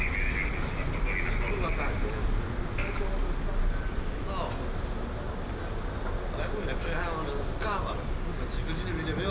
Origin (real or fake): real